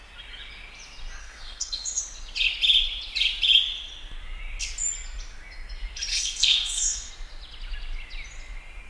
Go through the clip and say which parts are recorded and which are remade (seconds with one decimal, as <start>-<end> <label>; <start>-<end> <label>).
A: 0.0-1.2 recorded; 1.2-2.0 remade; 2.0-6.1 recorded; 6.1-7.1 remade; 7.1-8.9 recorded